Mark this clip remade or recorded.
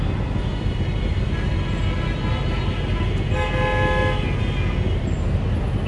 recorded